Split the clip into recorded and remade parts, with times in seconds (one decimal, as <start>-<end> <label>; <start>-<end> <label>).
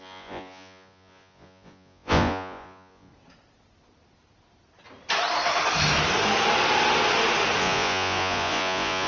0.0-3.1 remade; 3.1-7.6 recorded; 7.6-9.1 remade